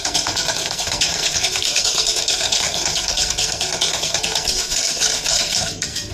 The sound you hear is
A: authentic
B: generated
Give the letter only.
B